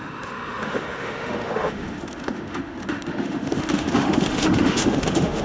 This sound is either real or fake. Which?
fake